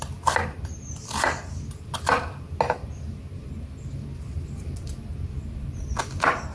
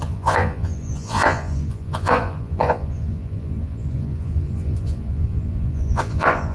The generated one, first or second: second